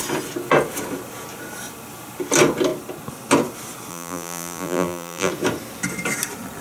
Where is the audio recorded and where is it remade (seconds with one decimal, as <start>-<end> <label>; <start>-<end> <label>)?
0.0-3.9 recorded; 3.9-5.3 remade; 5.3-6.6 recorded